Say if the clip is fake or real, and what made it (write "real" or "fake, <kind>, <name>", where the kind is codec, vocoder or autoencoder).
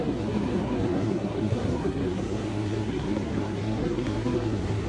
fake, codec, SNAC